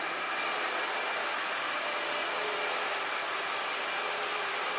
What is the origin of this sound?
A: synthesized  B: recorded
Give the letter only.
B